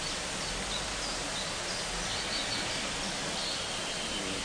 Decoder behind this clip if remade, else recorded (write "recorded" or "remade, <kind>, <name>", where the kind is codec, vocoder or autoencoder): recorded